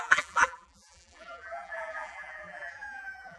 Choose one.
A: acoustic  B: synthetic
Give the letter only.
B